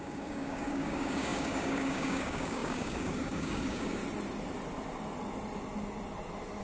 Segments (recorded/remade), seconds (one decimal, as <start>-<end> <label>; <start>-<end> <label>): 0.0-4.0 remade; 4.0-6.6 recorded